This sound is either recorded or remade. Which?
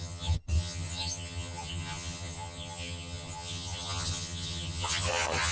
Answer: remade